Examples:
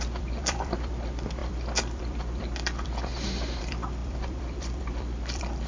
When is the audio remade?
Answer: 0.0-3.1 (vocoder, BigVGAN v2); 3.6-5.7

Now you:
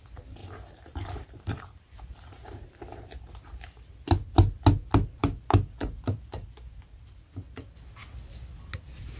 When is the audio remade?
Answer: 0.4-3.9 (vocoder, BigVGAN v2); 5.2-7.2